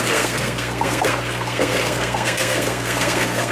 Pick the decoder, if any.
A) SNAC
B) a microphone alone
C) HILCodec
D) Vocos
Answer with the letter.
A